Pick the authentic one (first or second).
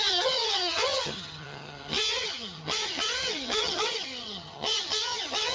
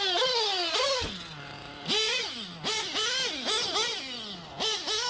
second